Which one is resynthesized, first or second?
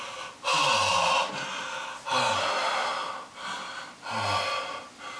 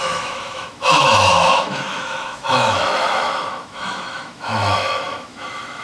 second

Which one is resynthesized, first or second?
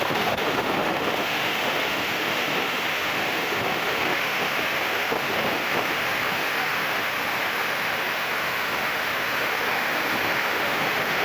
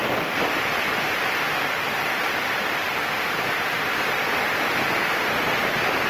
first